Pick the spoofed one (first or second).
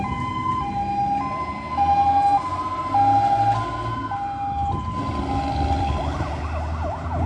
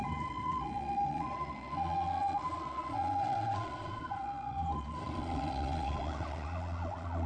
second